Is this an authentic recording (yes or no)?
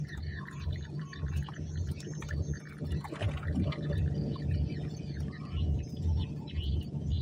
no